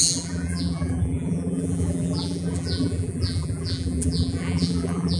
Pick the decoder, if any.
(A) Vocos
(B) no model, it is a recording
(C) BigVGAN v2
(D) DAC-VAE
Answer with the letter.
C